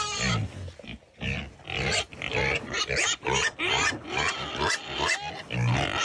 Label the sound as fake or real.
real